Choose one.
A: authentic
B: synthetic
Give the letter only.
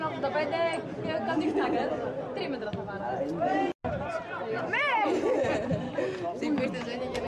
A